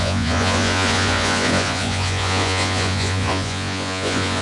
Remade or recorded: remade